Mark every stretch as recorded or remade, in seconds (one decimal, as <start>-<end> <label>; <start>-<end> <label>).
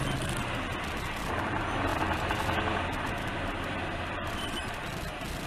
0.0-5.5 recorded